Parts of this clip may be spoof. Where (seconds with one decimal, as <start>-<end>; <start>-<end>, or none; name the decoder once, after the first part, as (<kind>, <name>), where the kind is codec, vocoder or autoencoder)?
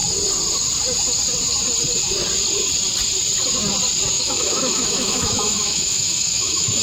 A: 4.1-6.8 (autoencoder, DAC-VAE)